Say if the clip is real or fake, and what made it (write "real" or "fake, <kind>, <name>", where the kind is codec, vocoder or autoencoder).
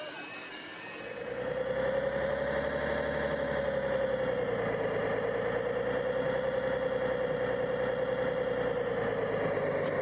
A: real